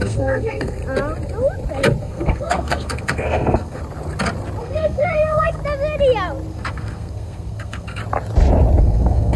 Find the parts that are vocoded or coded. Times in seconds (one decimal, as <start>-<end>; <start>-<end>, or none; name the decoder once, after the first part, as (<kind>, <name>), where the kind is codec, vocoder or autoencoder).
0.0-0.8 (codec, SNAC); 2.0-3.8; 4.6-5.6; 6.5-8.0; 8.8-9.4